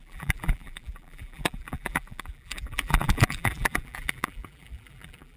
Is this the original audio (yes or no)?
no